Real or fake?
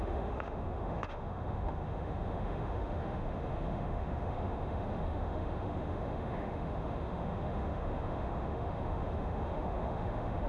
fake